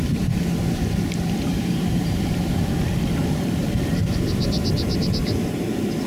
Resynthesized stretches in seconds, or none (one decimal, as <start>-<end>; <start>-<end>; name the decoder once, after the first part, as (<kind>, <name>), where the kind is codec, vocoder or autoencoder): 1.5-2.7 (vocoder, BigVGAN v2)